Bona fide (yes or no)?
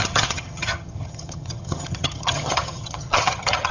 no